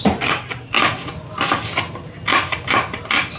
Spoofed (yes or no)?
no